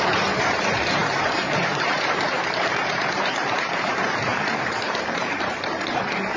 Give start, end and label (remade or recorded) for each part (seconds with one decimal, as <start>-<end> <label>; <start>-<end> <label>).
0.0-6.4 remade